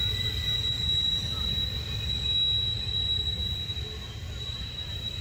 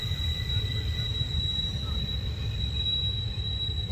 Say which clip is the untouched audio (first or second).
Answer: first